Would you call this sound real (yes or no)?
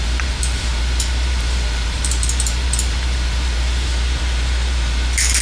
no